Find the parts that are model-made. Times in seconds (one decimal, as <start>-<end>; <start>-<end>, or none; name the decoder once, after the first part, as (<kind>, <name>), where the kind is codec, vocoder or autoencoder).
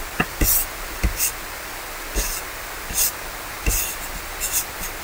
none